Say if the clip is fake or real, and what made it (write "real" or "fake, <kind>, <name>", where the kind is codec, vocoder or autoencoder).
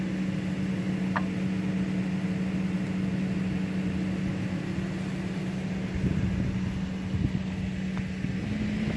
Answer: real